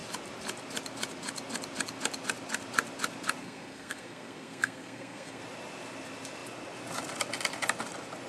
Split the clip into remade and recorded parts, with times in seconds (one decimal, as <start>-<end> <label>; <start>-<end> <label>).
0.0-3.4 recorded; 3.4-5.4 remade; 5.4-8.3 recorded